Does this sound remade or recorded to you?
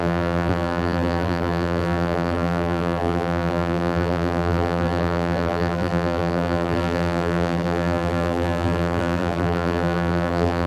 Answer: remade